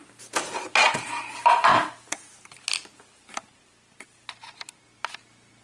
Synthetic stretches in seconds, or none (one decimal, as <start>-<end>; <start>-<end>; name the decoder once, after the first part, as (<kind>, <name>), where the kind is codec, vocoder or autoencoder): none